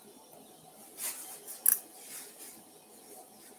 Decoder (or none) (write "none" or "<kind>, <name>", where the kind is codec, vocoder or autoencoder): none